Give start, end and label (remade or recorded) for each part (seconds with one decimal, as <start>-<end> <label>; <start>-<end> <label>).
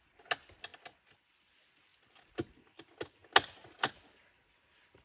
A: 0.0-5.0 recorded